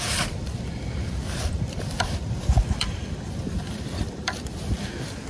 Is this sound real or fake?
fake